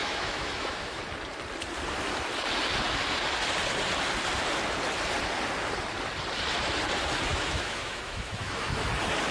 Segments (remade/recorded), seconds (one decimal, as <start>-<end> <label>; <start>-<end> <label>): 0.0-1.0 remade; 1.0-7.3 recorded; 7.3-8.8 remade; 8.8-9.3 recorded